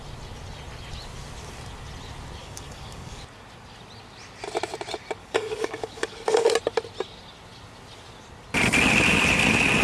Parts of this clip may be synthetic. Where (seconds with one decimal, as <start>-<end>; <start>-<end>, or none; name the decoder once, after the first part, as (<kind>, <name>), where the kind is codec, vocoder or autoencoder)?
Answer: 2.4-3.2 (codec, DAC); 5.2-6.5